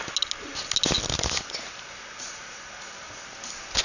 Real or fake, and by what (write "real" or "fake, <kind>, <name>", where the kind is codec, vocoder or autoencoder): real